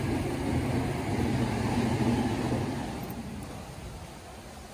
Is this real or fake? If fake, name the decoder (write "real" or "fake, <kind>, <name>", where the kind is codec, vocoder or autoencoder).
real